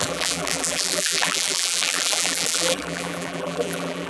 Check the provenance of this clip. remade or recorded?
remade